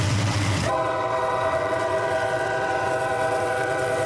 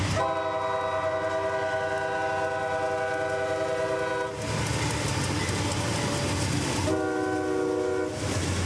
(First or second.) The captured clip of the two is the second